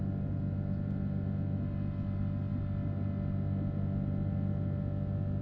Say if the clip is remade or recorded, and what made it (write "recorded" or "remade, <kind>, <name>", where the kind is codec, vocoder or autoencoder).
recorded